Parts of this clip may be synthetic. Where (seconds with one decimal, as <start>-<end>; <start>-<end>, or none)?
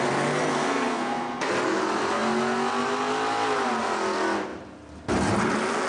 0.5-1.5